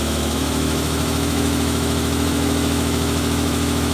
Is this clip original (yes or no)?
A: no